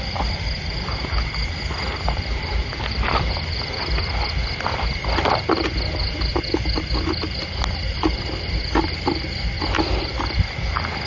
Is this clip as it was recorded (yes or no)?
yes